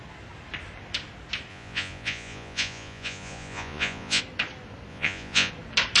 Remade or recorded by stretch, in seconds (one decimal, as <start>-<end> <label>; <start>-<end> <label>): 0.0-1.5 recorded; 1.5-4.2 remade; 4.2-4.9 recorded; 4.9-5.5 remade; 5.5-6.0 recorded